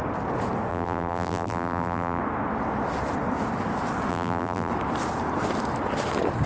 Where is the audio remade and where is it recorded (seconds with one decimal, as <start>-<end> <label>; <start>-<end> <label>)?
0.0-0.7 recorded; 0.7-2.2 remade; 2.2-4.1 recorded; 4.1-4.7 remade; 4.7-6.5 recorded